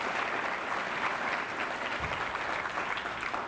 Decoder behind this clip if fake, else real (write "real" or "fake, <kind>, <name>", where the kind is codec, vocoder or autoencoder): real